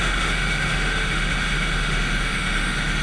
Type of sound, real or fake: fake